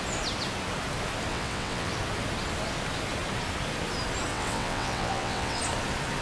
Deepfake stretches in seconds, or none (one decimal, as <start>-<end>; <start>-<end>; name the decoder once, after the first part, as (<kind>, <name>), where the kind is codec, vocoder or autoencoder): 1.3-1.9 (vocoder, WaveNeXt); 4.3-5.6